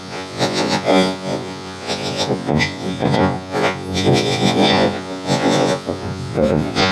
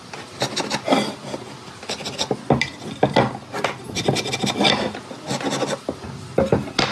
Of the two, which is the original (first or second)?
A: second